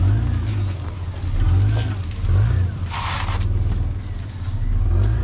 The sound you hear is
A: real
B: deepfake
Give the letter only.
A